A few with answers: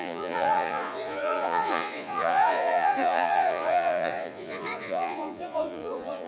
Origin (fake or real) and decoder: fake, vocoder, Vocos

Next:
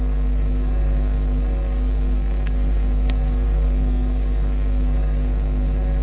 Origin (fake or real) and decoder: fake, codec, SNAC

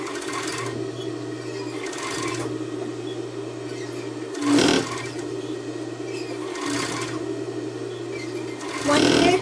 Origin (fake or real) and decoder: real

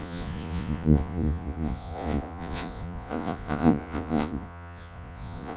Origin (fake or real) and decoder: fake, vocoder, Vocos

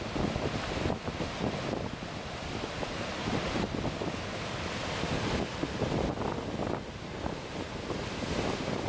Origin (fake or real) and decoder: real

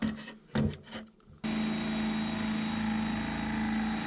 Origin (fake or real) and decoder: real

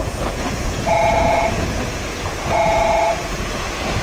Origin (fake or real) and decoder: fake, vocoder, Vocos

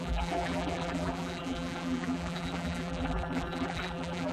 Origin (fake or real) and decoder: fake, vocoder, BigVGAN v2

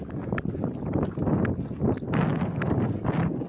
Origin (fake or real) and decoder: real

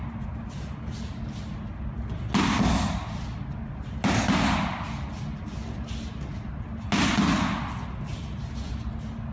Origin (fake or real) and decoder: real